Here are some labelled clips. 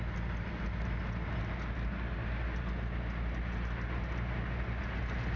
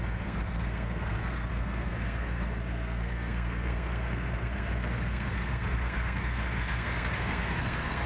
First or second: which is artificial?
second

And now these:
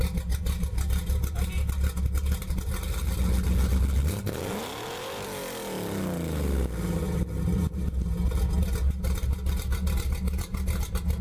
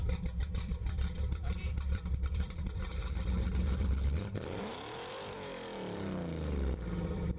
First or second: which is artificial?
second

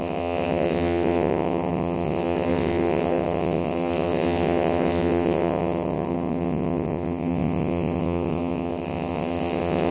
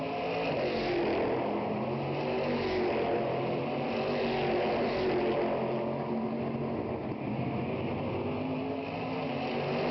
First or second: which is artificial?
first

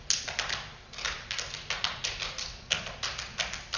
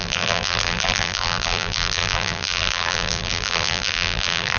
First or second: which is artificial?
second